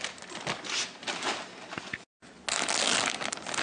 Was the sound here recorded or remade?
recorded